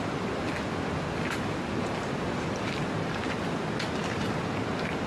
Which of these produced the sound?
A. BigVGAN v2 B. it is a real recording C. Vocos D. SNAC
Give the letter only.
B